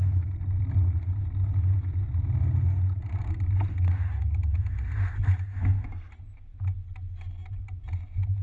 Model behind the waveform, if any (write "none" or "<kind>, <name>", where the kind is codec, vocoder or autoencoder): none